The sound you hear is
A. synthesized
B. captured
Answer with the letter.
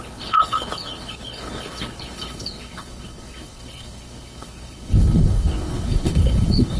A